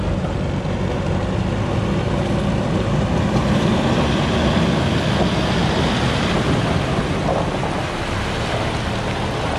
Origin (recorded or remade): recorded